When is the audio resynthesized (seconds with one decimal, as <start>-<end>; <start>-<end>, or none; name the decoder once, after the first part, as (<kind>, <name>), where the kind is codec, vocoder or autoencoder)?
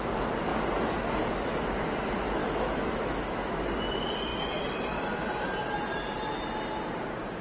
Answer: 2.4-3.6 (autoencoder, DAC-VAE)